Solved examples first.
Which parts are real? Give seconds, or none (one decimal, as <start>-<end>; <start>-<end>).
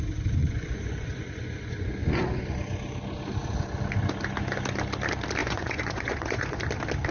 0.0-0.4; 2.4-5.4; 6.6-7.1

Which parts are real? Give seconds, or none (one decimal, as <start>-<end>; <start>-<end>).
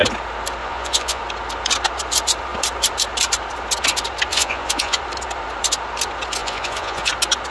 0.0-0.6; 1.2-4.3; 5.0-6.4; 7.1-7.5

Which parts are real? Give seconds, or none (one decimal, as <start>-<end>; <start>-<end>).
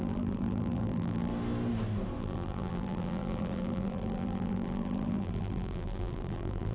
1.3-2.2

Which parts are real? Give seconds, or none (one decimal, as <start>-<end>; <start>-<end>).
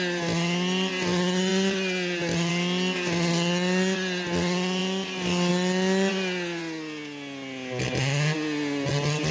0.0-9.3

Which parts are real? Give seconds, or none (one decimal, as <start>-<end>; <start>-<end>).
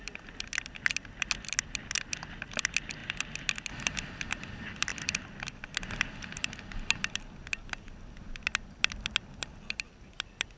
0.0-10.6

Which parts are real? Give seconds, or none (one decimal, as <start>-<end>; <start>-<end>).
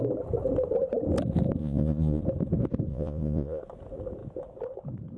0.0-1.6; 2.2-2.9; 3.6-5.2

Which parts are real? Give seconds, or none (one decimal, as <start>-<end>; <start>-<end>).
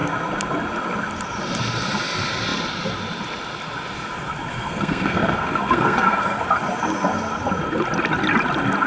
0.0-4.5; 6.4-8.9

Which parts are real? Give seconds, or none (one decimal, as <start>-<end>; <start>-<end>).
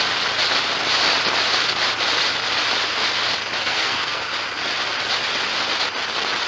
0.0-3.6; 4.2-6.5